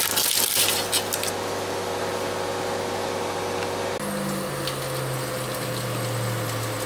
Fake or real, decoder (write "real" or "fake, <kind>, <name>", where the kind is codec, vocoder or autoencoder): real